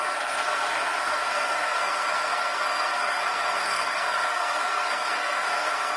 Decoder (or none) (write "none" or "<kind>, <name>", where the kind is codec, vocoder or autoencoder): codec, SNAC